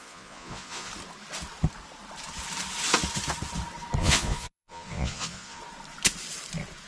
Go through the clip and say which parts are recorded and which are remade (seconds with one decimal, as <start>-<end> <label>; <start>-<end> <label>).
0.0-0.9 remade; 0.9-4.0 recorded; 4.0-5.6 remade; 5.6-6.9 recorded

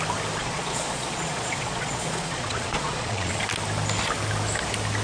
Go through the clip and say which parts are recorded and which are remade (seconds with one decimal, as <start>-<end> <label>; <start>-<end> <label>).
0.0-0.4 recorded; 0.4-3.4 remade; 3.4-5.0 recorded